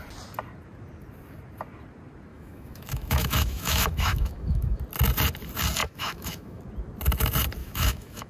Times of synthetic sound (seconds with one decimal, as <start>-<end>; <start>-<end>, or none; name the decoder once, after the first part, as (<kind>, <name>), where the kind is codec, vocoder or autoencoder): 2.3-4.8 (autoencoder, DAC-VAE); 5.8-6.6; 7.6-8.3